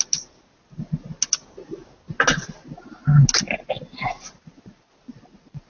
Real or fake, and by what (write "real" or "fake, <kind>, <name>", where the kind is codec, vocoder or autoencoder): real